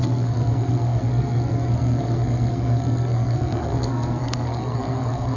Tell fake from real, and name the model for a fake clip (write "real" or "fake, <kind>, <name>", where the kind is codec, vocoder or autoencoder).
fake, codec, SNAC